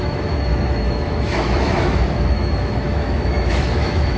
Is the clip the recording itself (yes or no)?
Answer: no